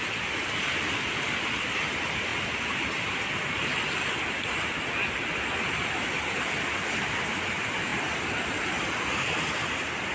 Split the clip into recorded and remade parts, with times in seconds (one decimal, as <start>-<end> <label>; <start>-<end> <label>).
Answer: 0.0-10.1 recorded